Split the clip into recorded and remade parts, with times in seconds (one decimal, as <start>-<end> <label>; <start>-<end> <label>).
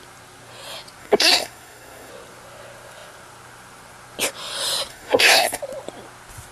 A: 0.0-1.0 recorded; 1.0-2.1 remade; 2.1-4.9 recorded; 4.9-5.6 remade; 5.6-6.5 recorded